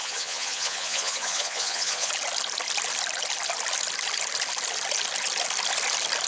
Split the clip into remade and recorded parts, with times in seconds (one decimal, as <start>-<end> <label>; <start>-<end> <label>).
0.0-2.1 remade; 2.1-6.3 recorded